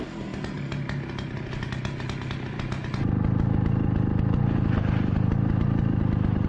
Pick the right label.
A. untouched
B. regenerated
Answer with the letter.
A